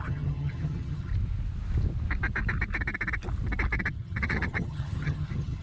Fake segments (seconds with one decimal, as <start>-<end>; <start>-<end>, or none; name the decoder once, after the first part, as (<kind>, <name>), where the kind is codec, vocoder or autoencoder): 0.0-1.1 (vocoder, HiFi-GAN); 3.9-5.6